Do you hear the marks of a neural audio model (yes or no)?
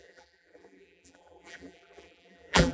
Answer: yes